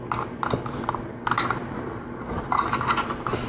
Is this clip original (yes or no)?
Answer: yes